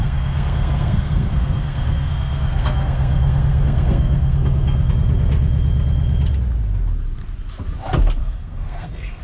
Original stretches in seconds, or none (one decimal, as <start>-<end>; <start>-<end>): 4.9-8.2